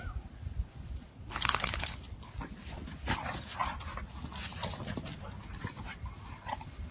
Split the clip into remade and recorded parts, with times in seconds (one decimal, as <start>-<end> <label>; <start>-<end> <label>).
0.0-1.1 recorded; 1.1-2.3 remade; 2.3-6.9 recorded